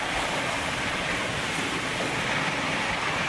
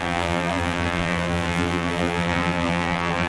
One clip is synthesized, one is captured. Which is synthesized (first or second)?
second